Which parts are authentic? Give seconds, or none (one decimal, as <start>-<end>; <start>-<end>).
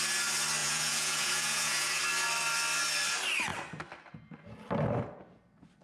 0.0-0.6; 2.0-5.8